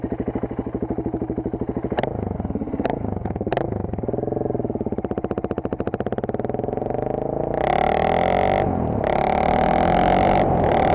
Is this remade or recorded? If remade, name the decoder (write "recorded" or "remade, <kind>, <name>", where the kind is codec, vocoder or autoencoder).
recorded